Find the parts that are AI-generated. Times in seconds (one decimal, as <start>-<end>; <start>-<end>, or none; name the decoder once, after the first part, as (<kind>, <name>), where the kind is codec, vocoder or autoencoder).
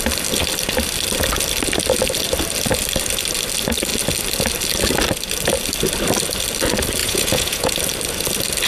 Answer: 7.0-7.7 (vocoder, Vocos)